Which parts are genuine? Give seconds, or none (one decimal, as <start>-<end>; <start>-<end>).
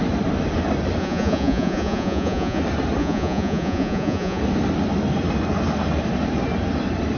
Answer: 0.0-1.0; 2.6-3.0; 4.4-7.2